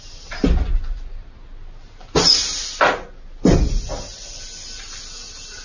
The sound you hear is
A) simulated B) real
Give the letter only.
B